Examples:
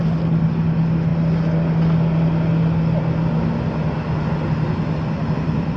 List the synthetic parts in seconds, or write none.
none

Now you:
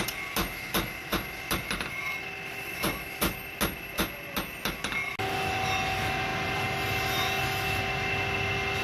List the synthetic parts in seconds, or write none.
none

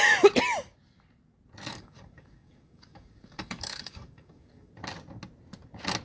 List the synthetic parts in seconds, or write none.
1.7-4.7 (codec, DAC)

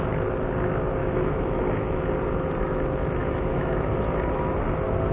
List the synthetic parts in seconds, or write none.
1.0-1.6 (autoencoder, DAC-VAE); 3.2-3.9

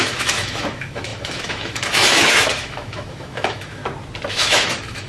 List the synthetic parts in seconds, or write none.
0.0-3.8 (autoencoder, DAC-VAE); 4.3-5.1